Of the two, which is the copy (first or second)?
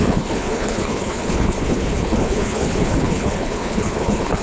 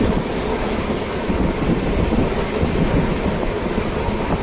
first